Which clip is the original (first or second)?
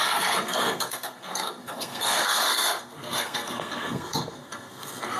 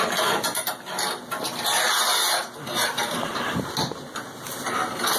second